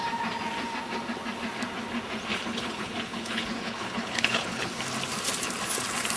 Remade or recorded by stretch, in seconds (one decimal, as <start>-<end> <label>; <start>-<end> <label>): 0.0-2.3 recorded; 2.3-4.8 remade; 4.8-6.2 recorded

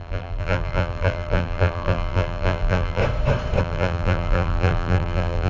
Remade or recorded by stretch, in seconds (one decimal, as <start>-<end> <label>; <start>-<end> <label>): 0.0-3.0 remade; 3.0-3.6 recorded; 3.6-5.5 remade

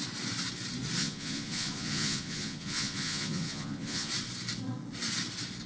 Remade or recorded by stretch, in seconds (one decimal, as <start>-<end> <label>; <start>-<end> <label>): 0.0-1.0 recorded; 1.0-4.1 remade; 4.1-5.7 recorded

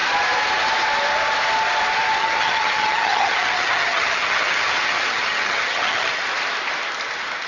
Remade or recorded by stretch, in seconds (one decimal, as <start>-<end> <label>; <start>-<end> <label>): 0.0-2.2 recorded; 2.2-6.2 remade; 6.2-7.5 recorded